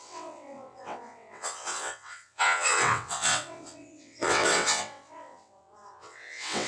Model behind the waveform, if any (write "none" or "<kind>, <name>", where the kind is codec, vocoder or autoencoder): vocoder, WaveNeXt